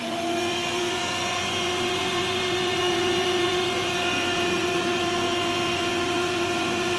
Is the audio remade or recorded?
remade